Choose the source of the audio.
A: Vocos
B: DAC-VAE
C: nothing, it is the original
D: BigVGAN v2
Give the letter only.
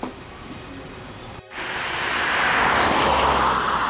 C